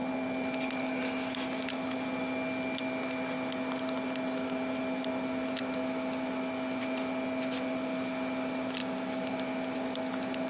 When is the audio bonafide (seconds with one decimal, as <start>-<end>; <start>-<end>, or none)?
0.0-10.5